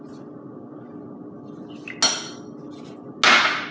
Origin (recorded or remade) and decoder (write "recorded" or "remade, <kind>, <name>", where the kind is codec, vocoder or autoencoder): recorded